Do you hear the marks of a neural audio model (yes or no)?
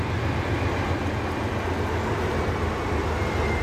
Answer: no